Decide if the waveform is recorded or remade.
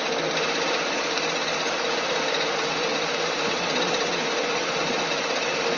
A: recorded